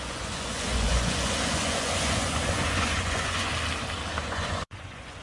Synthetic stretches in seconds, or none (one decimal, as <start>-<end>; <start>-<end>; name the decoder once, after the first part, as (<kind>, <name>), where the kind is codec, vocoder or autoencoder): 0.0-3.5 (vocoder, Vocos); 4.2-5.2